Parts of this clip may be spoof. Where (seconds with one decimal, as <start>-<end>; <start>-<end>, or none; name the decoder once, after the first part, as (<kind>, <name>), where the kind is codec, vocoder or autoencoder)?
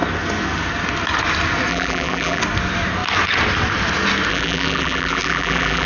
1.7-2.4 (vocoder, BigVGAN v2); 4.3-5.9